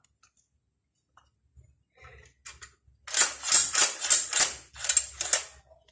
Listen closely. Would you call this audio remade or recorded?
recorded